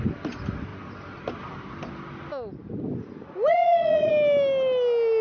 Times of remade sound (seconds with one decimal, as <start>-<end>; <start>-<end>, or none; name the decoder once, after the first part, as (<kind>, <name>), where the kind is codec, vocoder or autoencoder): 3.5-4.1 (vocoder, Vocos)